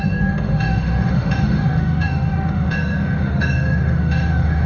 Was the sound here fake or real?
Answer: fake